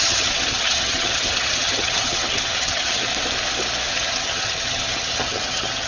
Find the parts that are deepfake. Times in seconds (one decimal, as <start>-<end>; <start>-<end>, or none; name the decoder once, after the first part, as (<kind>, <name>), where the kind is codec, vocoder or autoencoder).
0.0-3.1 (vocoder, HiFi-GAN); 3.9-5.9